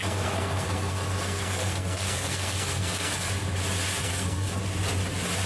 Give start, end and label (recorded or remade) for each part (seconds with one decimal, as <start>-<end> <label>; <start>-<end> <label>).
0.0-3.3 remade; 3.3-4.0 recorded; 4.0-4.6 remade; 4.6-5.5 recorded